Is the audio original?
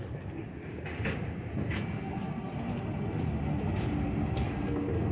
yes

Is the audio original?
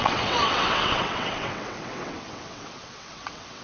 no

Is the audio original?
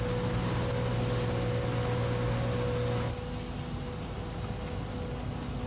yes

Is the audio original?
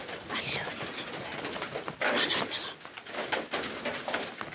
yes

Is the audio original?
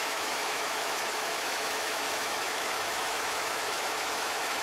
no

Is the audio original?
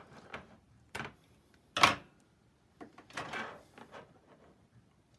yes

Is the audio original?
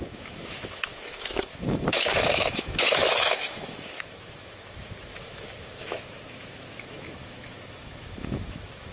no